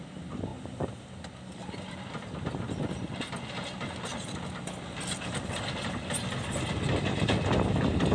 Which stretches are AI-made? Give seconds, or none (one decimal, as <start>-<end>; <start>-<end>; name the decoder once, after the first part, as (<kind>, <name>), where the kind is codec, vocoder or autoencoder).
none